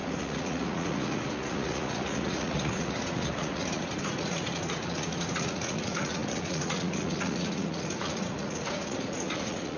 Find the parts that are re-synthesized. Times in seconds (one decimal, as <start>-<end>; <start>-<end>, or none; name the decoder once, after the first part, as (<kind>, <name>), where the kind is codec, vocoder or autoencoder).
0.0-9.8 (vocoder, Vocos)

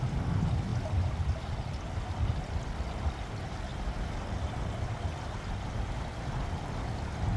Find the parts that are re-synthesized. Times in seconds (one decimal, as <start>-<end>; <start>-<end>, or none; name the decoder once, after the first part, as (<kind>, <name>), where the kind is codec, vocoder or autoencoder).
none

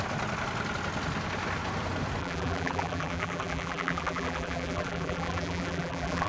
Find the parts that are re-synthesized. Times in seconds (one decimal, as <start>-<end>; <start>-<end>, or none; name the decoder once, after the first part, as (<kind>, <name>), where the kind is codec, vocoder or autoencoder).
2.2-6.3 (vocoder, BigVGAN v2)

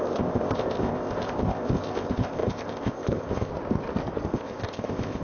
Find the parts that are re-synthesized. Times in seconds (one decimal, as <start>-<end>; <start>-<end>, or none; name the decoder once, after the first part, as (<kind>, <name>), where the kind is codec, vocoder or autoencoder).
0.0-3.5 (codec, ZipCodec); 4.3-5.2

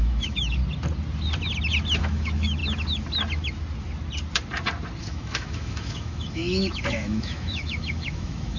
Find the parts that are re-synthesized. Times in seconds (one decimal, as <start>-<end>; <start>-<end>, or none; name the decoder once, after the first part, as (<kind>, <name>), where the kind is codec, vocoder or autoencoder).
0.0-0.6 (autoencoder, DAC-VAE); 2.0-2.6; 5.0-8.6

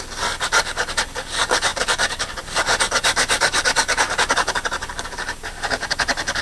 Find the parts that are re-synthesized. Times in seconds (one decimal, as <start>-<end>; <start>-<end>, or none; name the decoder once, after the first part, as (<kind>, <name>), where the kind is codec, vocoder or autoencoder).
0.0-6.4 (codec, DAC)